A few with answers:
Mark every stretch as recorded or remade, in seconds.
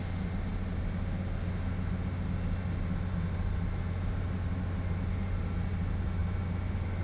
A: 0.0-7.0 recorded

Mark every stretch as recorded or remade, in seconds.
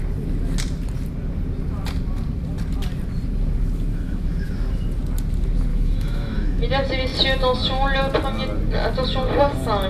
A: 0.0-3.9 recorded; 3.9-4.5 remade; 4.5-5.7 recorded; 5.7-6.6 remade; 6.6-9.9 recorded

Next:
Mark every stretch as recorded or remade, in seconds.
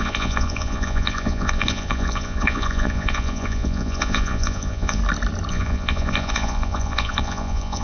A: 0.0-5.0 remade; 5.0-5.5 recorded; 5.5-7.8 remade